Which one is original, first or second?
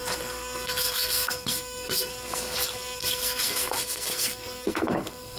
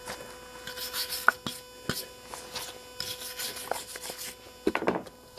second